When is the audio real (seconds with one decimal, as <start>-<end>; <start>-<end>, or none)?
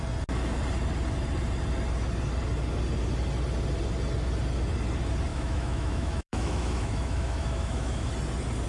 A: 0.0-5.3; 8.1-8.7